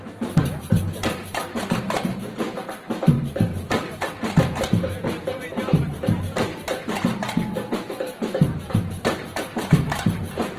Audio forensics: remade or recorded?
remade